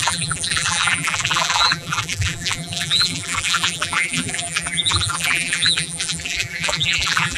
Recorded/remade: remade